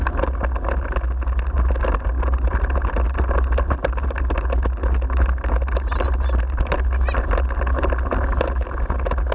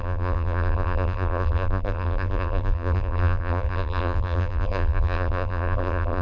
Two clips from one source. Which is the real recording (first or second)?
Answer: first